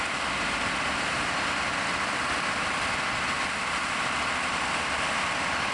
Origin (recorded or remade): recorded